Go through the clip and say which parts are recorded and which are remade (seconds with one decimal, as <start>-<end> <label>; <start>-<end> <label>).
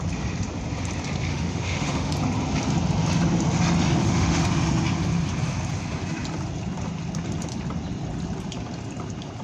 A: 0.0-1.3 recorded; 1.3-2.1 remade; 2.1-4.0 recorded; 4.0-4.5 remade; 4.5-9.4 recorded